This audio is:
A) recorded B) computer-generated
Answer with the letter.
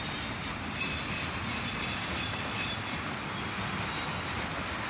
B